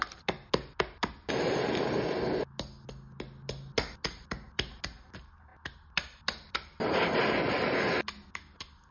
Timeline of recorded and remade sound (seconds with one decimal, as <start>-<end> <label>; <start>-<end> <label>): 0.0-8.9 recorded